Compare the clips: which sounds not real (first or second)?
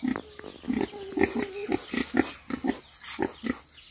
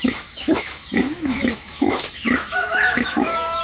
second